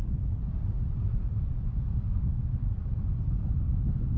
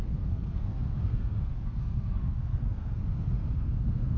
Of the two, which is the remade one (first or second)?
second